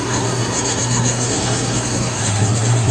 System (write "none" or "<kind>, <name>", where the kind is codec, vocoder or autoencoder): codec, SNAC